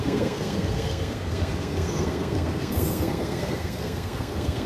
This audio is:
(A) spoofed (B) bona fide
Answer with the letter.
A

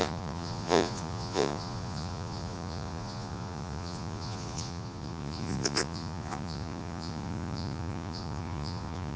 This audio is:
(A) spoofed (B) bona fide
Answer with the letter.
A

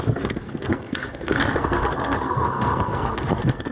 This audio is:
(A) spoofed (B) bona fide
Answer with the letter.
A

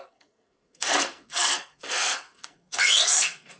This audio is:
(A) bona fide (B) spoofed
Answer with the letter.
B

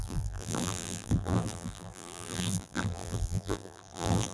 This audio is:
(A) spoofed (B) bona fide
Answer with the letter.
A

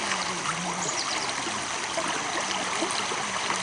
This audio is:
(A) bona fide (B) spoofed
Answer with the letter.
A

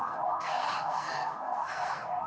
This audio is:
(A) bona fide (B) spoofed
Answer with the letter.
B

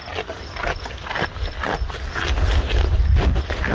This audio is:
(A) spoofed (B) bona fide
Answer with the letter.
B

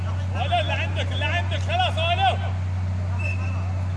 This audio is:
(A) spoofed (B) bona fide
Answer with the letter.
B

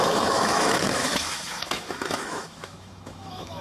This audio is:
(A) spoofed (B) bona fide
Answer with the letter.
A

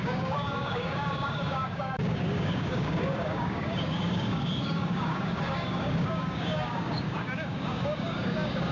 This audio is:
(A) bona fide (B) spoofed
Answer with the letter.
B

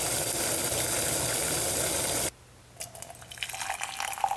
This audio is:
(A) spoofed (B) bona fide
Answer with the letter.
B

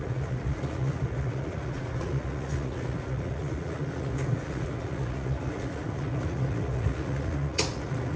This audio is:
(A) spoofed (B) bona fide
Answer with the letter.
A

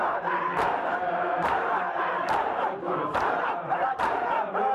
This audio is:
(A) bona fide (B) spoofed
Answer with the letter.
B